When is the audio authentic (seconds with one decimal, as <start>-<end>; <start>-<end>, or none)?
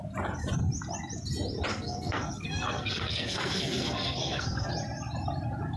0.0-1.7; 4.7-5.8